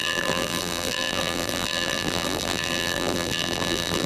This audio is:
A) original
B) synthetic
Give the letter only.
B